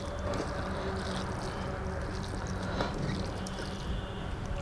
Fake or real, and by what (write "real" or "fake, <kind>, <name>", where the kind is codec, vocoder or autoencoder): real